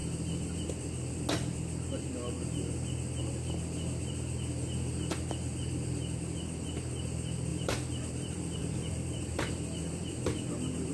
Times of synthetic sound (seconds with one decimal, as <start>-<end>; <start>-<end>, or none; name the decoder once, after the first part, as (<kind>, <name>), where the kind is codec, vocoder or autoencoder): 0.0-0.7 (vocoder, BigVGAN v2); 7.5-10.5